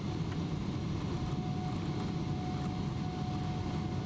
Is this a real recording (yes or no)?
yes